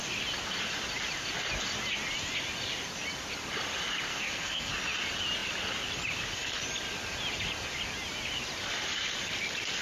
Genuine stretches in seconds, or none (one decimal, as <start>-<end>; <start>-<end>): 0.0-4.1; 4.7-9.8